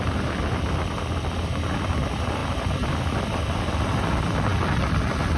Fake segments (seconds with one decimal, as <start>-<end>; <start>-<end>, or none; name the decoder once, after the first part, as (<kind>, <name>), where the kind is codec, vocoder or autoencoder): none